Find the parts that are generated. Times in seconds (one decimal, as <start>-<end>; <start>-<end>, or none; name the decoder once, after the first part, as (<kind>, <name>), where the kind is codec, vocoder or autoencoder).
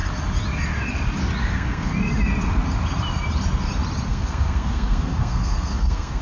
1.4-1.9 (codec, SNAC); 4.1-6.2